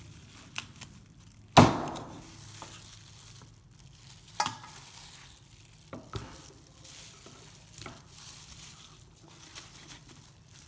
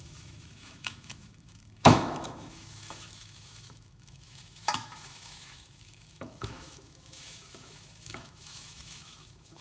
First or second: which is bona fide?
first